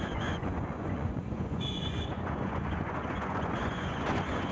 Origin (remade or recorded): remade